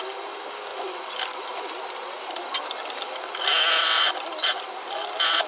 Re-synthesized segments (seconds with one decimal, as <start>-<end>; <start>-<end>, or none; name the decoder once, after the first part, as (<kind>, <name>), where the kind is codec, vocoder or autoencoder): none